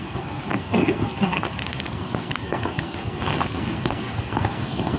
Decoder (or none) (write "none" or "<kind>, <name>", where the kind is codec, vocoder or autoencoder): codec, SNAC